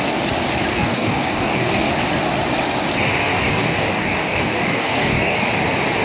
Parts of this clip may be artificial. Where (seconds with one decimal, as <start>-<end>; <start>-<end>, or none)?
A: 0.7-1.9; 3.2-5.5